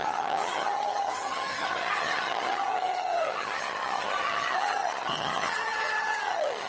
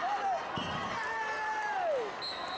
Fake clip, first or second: first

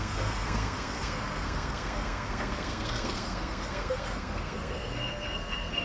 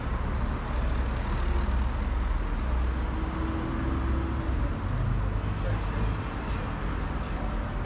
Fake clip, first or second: first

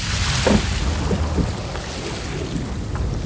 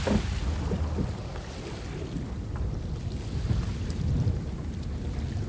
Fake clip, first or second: second